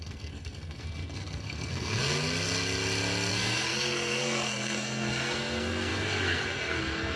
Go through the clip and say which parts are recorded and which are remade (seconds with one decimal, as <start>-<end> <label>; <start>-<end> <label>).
0.0-2.0 remade; 2.0-3.3 recorded; 3.3-7.2 remade